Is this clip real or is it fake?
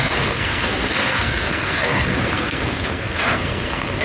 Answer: fake